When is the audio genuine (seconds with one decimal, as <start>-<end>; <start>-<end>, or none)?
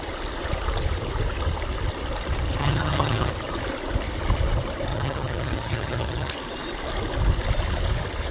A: 0.0-2.6; 3.3-4.9; 6.3-8.3